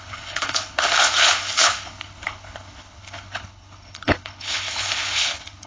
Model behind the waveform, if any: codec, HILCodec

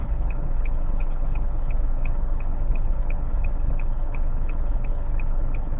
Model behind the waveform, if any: codec, HILCodec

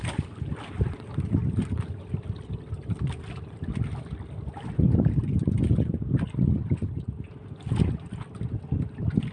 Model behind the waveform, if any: none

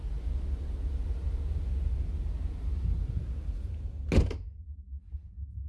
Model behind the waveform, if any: none